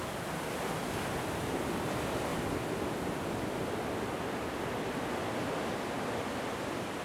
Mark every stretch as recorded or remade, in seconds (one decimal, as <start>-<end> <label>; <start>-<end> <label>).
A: 0.0-7.0 recorded